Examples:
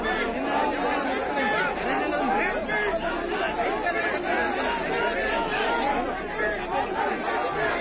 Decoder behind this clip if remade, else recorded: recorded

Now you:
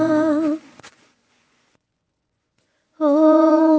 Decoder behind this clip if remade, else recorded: remade, vocoder, Vocos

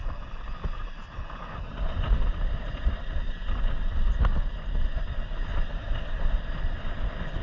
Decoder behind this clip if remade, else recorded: recorded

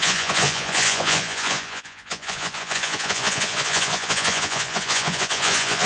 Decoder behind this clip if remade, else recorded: remade, vocoder, Vocos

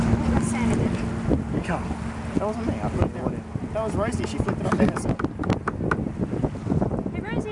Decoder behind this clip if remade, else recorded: recorded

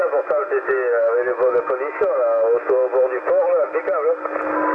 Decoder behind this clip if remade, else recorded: recorded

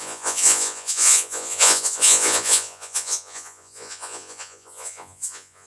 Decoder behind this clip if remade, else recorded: remade, vocoder, Vocos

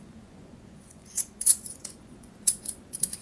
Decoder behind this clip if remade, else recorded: remade, vocoder, Vocos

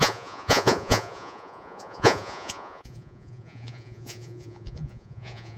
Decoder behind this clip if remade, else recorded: remade, vocoder, Vocos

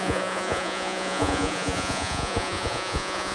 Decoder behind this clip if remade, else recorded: remade, vocoder, Vocos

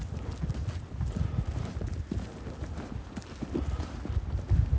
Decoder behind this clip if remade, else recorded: recorded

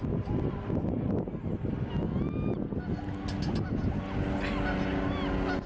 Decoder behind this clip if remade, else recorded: recorded